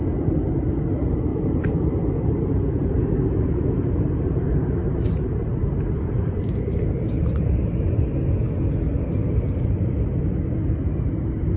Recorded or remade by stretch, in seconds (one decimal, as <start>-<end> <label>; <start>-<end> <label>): 0.0-1.3 recorded; 1.3-2.0 remade; 2.0-2.8 recorded; 2.8-7.7 remade; 7.7-11.6 recorded